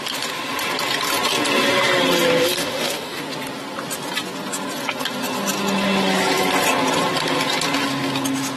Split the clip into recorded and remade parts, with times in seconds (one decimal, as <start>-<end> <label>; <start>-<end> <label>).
0.0-2.6 recorded; 2.6-3.2 remade; 3.2-8.6 recorded